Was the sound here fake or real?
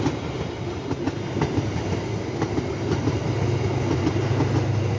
real